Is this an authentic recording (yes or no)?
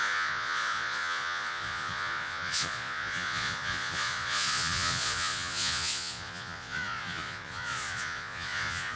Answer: no